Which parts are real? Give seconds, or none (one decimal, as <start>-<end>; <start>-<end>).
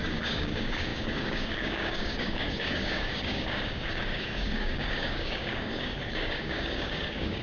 none